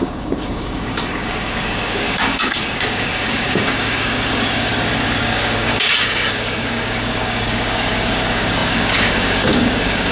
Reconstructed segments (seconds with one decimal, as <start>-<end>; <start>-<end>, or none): 0.0-10.1